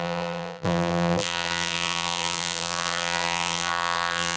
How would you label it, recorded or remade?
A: remade